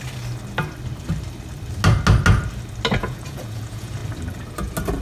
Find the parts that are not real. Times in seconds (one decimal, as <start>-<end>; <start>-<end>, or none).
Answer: 3.0-4.0